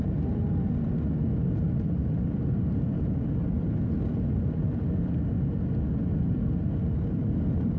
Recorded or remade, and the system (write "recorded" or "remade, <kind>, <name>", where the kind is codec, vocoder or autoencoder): recorded